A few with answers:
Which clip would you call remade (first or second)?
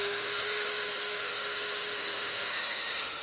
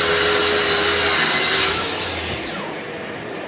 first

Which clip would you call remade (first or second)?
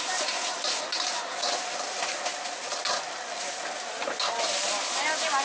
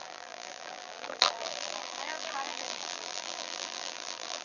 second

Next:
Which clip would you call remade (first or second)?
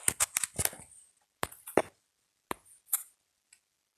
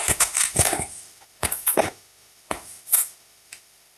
second